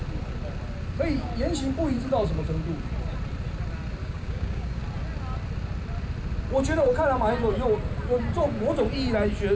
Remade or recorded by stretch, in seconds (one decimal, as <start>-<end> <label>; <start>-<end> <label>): 0.0-4.0 recorded; 4.0-4.8 remade; 4.8-9.6 recorded